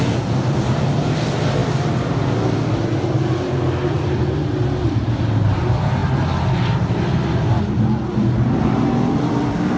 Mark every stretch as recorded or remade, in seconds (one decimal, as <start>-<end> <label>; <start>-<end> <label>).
0.0-9.8 recorded